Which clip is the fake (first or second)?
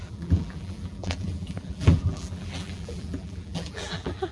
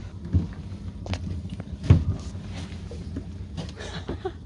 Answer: first